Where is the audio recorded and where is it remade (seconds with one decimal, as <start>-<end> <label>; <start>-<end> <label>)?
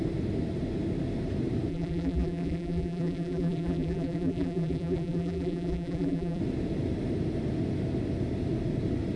0.0-1.7 recorded; 1.7-6.4 remade; 6.4-9.2 recorded